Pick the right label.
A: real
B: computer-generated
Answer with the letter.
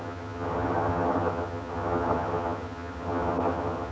B